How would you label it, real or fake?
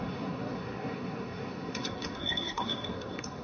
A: fake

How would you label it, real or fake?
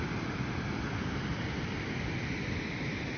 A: real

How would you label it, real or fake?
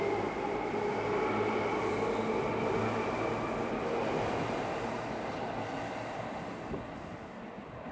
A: real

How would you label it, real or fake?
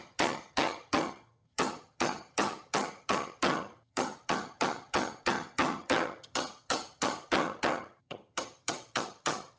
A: fake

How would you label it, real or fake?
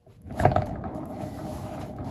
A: fake